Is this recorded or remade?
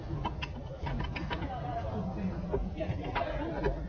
recorded